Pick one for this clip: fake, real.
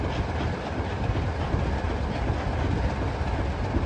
real